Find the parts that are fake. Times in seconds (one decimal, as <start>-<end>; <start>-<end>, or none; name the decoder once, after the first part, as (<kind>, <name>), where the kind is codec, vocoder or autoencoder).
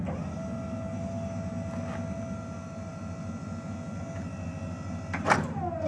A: none